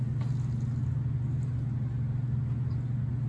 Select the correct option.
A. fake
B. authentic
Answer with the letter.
B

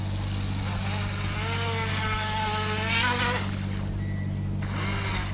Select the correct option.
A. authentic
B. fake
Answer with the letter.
A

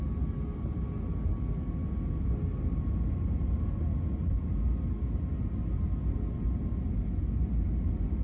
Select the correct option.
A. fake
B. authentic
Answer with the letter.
B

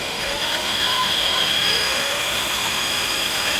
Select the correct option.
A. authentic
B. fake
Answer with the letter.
B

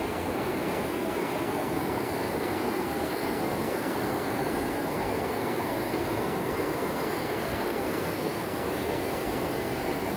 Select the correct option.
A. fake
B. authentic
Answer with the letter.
A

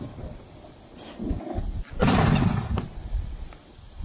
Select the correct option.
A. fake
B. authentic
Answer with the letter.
B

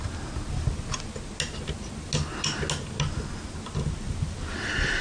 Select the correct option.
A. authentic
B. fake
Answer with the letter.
A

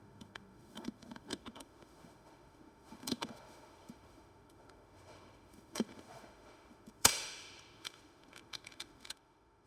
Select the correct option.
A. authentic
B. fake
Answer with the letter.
B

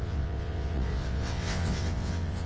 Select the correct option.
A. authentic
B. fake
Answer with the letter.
B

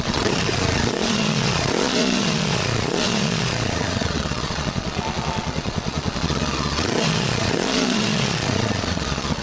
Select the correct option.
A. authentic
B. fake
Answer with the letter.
B